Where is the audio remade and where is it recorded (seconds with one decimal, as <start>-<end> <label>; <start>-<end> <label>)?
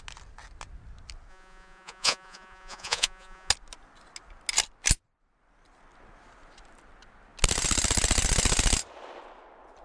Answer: 0.0-1.3 recorded; 1.3-3.5 remade; 3.5-9.8 recorded